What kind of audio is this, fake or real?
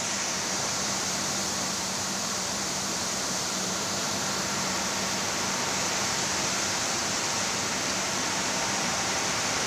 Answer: fake